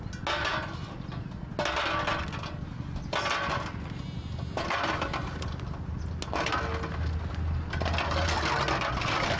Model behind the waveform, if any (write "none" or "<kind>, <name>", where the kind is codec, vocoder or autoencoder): none